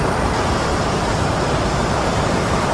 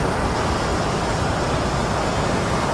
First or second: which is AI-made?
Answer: first